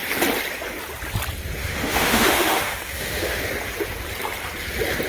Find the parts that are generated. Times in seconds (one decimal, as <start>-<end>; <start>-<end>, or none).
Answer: 1.6-3.4